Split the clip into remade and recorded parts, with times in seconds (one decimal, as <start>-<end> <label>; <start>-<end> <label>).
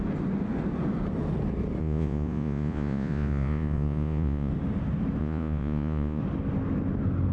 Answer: 0.0-1.8 recorded; 1.8-4.5 remade; 4.5-5.2 recorded; 5.2-6.2 remade; 6.2-7.3 recorded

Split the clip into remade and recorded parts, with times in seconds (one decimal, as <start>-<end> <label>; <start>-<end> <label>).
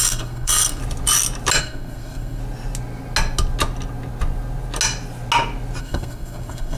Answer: 0.0-0.8 remade; 0.8-1.6 recorded; 1.6-2.4 remade; 2.4-5.8 recorded; 5.8-6.8 remade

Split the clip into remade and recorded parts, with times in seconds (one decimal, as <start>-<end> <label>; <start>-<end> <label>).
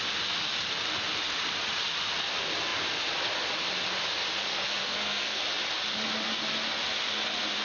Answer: 0.0-4.5 recorded; 4.5-5.4 remade; 5.4-7.6 recorded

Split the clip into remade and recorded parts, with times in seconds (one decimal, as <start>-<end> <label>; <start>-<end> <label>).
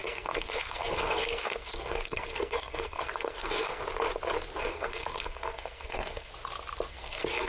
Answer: 0.0-3.8 remade; 3.8-4.6 recorded; 4.6-6.3 remade; 6.3-6.9 recorded; 6.9-7.5 remade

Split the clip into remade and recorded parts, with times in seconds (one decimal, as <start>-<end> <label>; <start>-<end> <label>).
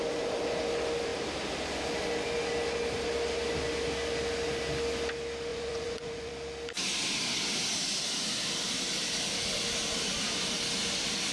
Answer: 0.0-5.5 recorded; 5.5-6.3 remade; 6.3-11.3 recorded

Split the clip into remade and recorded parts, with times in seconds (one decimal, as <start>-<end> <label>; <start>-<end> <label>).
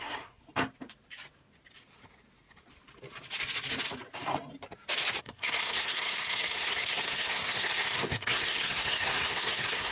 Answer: 0.0-0.4 remade; 0.4-5.2 recorded; 5.2-9.9 remade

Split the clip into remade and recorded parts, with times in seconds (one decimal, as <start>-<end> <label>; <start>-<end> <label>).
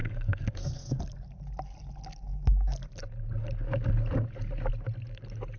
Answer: 0.0-1.0 remade; 1.0-5.6 recorded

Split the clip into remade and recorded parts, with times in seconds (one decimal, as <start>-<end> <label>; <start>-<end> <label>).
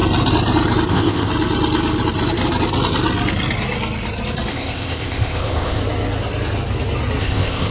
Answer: 0.0-0.9 recorded; 0.9-1.3 remade; 1.3-4.5 recorded; 4.5-5.8 remade; 5.8-7.2 recorded; 7.2-7.7 remade